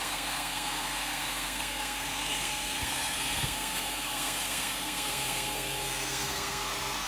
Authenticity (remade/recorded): remade